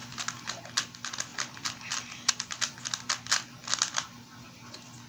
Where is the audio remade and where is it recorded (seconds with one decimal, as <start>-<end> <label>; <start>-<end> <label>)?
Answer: 0.0-1.3 recorded; 1.3-2.3 remade; 2.3-5.1 recorded